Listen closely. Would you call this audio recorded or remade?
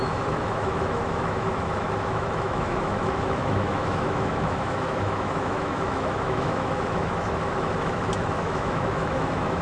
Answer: remade